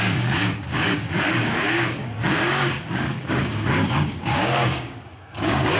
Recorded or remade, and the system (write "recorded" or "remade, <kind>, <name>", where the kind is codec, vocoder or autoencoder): remade, codec, DAC